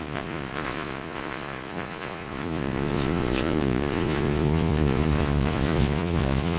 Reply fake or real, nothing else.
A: fake